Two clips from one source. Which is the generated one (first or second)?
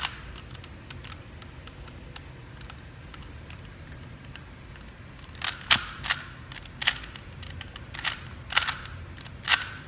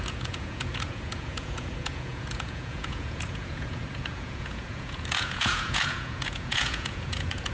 second